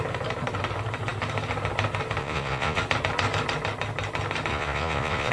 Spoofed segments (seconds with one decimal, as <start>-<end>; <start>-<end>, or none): 2.2-2.8; 4.5-5.3